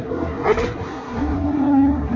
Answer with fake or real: fake